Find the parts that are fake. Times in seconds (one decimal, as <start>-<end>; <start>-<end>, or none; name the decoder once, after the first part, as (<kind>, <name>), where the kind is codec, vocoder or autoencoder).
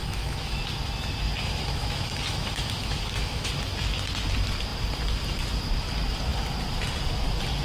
0.0-0.6 (autoencoder, DAC-VAE); 1.4-3.5